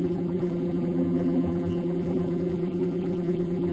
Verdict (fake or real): fake